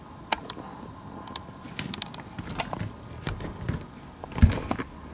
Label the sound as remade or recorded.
recorded